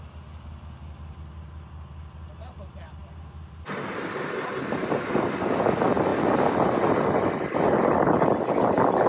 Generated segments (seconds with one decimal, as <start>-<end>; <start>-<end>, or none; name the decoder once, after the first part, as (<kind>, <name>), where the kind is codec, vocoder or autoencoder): none

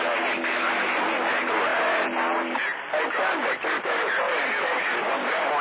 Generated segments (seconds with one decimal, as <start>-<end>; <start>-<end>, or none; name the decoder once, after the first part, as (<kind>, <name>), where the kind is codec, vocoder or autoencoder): none

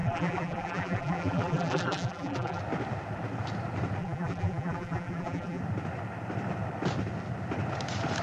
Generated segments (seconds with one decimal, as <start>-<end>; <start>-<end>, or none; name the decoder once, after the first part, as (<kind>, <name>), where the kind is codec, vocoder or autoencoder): 0.0-2.6 (vocoder, BigVGAN v2); 4.0-5.6